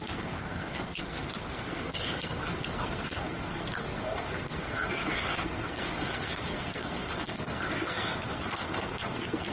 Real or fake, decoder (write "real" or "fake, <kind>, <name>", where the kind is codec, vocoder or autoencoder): fake, codec, SNAC